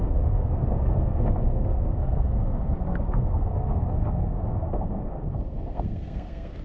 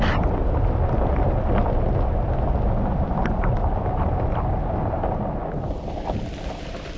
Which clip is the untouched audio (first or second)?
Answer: second